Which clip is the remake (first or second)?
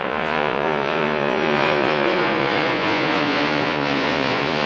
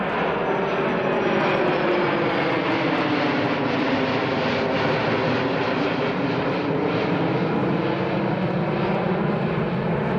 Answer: first